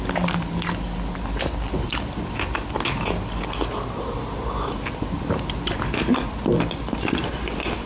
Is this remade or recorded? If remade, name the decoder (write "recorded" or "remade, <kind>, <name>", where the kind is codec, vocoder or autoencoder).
recorded